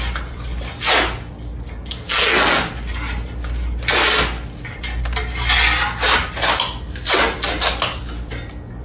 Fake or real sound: real